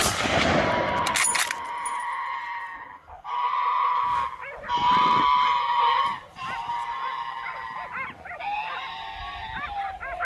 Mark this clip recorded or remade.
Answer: recorded